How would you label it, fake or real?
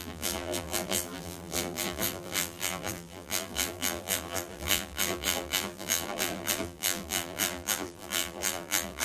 fake